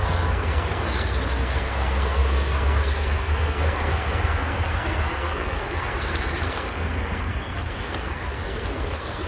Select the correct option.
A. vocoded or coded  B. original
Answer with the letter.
A